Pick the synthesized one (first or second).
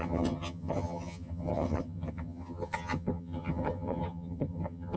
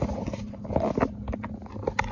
first